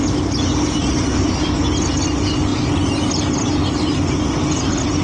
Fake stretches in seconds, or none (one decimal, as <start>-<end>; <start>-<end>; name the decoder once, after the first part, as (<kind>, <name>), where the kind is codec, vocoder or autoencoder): none